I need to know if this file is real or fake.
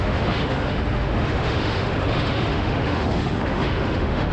fake